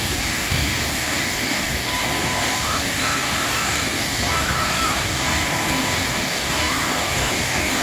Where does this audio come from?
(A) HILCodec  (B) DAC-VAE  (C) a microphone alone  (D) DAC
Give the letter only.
D